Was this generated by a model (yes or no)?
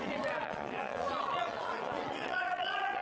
yes